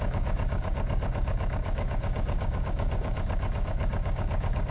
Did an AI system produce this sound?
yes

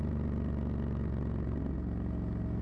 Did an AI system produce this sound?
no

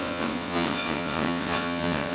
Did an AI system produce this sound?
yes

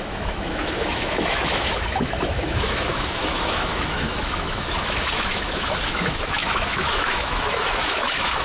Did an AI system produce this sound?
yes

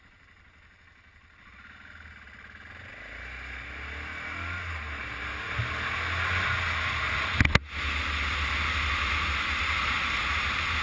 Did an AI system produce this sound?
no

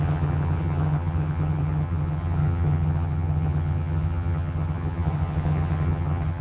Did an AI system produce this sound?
yes